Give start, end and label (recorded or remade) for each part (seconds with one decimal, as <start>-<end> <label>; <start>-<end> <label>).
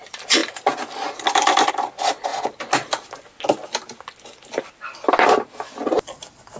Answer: 0.0-6.6 recorded